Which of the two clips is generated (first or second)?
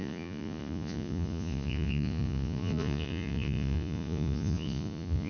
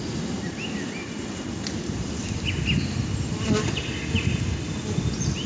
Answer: first